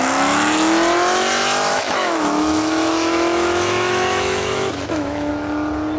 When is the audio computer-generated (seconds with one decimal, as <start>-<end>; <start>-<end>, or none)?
1.7-5.3